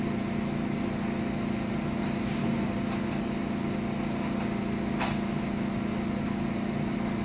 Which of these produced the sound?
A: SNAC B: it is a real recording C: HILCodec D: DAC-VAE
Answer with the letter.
B